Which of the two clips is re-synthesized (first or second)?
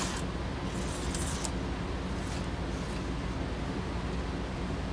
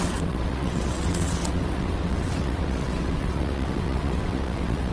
second